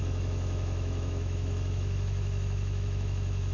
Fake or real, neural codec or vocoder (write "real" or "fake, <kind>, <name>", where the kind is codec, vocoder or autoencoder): fake, autoencoder, DAC-VAE